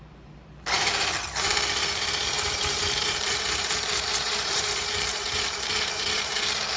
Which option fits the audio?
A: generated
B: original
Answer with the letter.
A